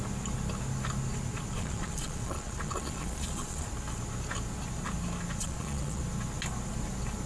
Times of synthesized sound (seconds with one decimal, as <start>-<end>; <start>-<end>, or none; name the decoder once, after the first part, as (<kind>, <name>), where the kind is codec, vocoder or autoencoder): 1.5-3.7 (vocoder, Vocos); 5.4-6.0